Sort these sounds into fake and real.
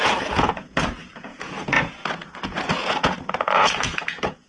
fake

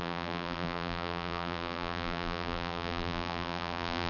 fake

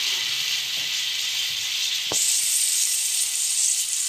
fake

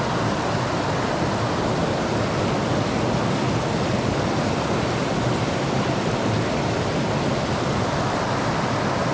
real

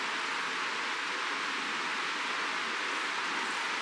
real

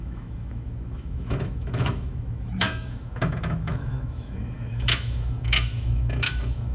fake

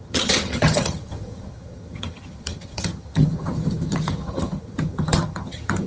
fake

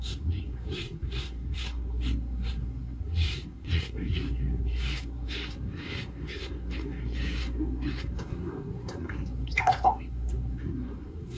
fake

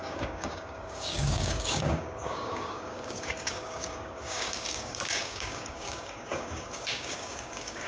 fake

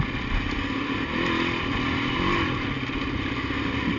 real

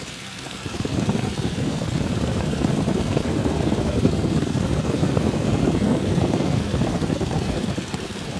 fake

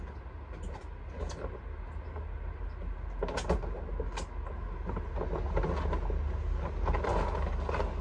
real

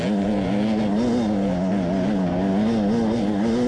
real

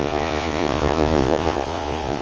fake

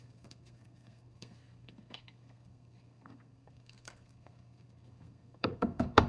fake